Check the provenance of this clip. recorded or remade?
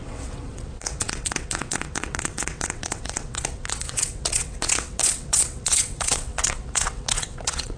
remade